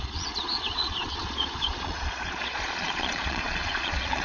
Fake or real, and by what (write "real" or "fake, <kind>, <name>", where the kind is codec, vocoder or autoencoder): fake, vocoder, Vocos